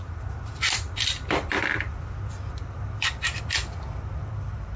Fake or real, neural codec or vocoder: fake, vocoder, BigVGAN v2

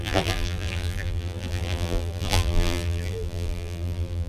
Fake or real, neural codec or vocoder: fake, vocoder, BigVGAN v2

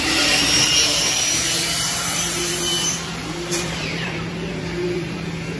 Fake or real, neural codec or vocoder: fake, vocoder, BigVGAN v2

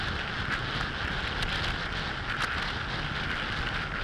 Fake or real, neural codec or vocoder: real